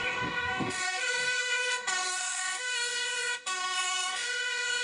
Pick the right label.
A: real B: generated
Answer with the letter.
B